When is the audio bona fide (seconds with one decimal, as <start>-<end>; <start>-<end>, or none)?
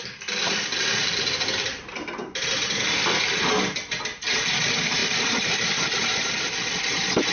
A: 0.0-0.4; 2.1-5.0; 6.3-7.3